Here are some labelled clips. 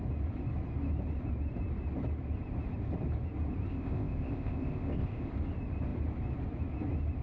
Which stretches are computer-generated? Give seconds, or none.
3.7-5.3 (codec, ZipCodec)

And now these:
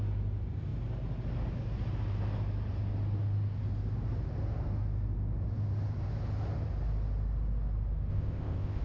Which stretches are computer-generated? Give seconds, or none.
8.1-8.8 (codec, ZipCodec)

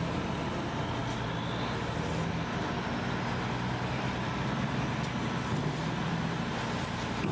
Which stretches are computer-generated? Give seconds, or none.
none

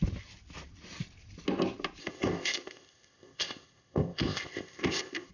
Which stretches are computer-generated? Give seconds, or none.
2.0-5.3 (codec, ZipCodec)